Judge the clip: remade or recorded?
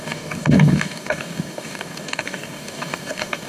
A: remade